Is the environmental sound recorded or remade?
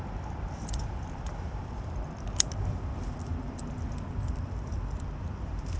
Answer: remade